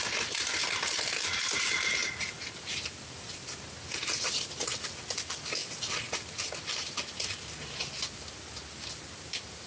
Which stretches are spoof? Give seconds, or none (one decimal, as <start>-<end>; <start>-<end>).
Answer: none